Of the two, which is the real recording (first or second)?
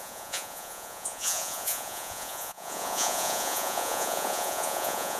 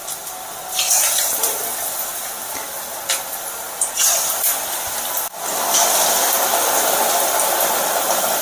second